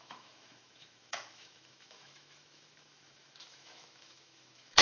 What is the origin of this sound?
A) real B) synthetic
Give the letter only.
B